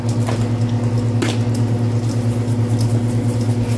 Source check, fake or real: real